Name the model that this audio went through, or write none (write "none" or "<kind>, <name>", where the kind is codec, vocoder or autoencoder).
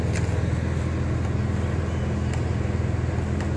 none